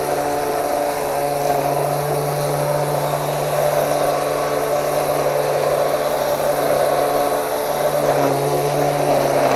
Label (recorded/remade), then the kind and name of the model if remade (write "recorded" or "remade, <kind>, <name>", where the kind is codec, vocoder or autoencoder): remade, vocoder, BigVGAN v2